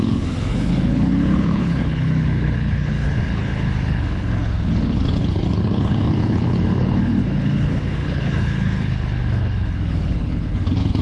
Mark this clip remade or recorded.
remade